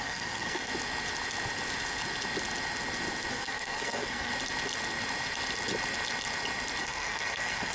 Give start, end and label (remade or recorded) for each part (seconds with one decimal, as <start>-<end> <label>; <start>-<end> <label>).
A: 0.0-0.7 remade; 0.7-3.3 recorded; 3.3-4.3 remade; 4.3-6.8 recorded; 6.8-7.7 remade